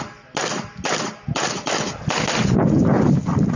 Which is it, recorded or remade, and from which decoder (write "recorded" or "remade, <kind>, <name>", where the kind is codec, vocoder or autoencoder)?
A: recorded